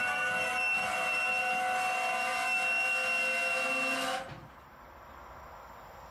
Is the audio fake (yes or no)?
no